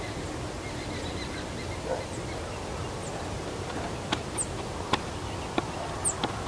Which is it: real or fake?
real